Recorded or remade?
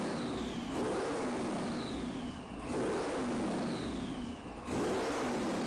recorded